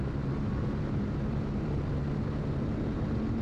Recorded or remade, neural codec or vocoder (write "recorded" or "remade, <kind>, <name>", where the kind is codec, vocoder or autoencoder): remade, vocoder, BigVGAN v2